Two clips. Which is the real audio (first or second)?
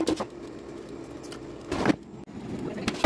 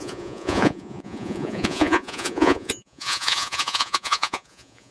first